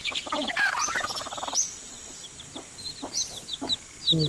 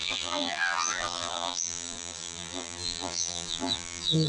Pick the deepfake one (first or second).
second